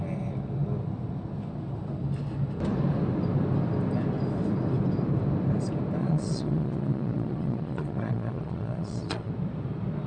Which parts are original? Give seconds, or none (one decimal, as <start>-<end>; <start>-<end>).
0.0-6.0; 9.3-10.1